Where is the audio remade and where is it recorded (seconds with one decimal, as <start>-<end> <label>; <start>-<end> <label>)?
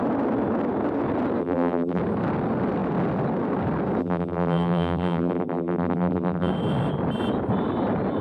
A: 0.0-1.4 recorded; 1.4-2.0 remade; 2.0-4.0 recorded; 4.0-6.5 remade; 6.5-8.2 recorded